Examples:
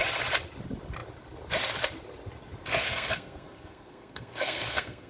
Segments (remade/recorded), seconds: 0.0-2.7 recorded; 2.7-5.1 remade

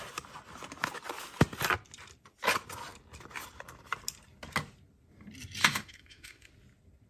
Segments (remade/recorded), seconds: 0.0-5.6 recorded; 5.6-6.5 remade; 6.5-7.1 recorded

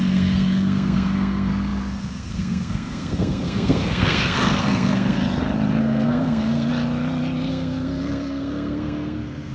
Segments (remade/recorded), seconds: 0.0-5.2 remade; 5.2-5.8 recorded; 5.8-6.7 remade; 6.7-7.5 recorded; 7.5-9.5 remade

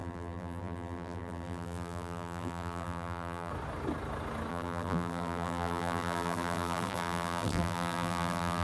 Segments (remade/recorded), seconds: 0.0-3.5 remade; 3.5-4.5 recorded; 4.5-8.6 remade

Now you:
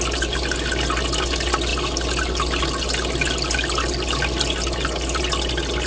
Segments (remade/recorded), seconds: 0.0-5.9 recorded

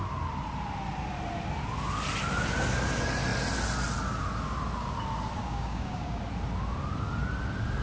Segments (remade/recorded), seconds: 0.0-5.4 recorded; 5.4-6.2 remade; 6.2-7.8 recorded